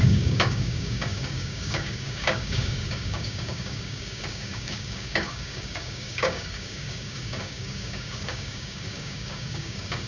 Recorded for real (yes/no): no